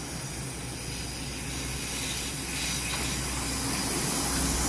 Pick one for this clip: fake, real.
real